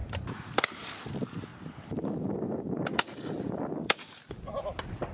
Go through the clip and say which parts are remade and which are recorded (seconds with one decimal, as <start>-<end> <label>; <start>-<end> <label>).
0.0-1.1 remade; 1.1-1.5 recorded; 1.5-4.6 remade; 4.6-5.1 recorded